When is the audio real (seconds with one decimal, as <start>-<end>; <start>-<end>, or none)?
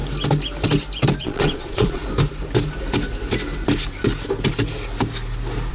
0.0-1.2; 2.0-5.7